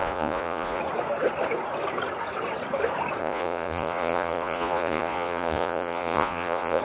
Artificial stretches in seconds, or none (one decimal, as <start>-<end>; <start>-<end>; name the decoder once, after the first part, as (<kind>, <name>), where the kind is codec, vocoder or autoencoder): 0.0-0.8 (vocoder, Vocos); 3.2-6.8